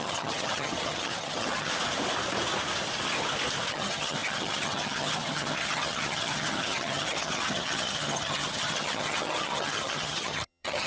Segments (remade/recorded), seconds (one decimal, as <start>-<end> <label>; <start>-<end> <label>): 0.0-1.7 remade; 1.7-3.7 recorded; 3.7-10.9 remade